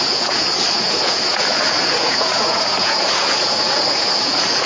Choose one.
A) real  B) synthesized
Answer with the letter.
B